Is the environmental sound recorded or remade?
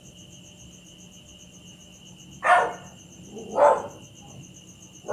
recorded